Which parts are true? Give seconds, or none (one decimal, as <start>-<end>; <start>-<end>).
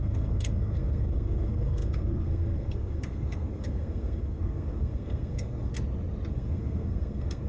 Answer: 5.7-6.3